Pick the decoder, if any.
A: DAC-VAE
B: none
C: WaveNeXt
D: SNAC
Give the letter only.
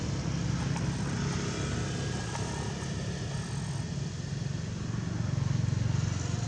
B